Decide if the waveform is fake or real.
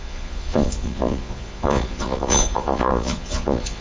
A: fake